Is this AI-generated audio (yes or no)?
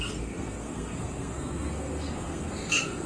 yes